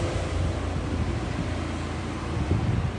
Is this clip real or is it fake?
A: real